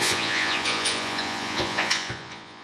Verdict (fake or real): fake